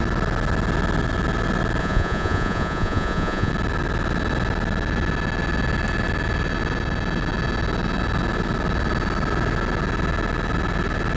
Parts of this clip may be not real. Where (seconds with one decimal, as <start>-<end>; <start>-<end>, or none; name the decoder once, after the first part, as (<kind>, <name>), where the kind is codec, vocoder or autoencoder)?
1.8-3.5 (vocoder, Vocos)